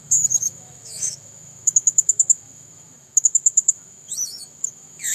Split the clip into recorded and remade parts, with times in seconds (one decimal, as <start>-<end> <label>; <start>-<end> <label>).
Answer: 0.0-5.1 remade